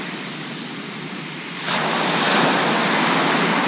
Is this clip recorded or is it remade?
recorded